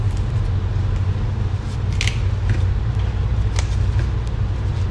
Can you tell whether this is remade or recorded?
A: recorded